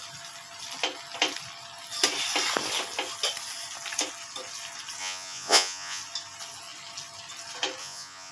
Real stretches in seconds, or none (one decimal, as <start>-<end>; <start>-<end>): 0.0-5.0; 6.0-7.8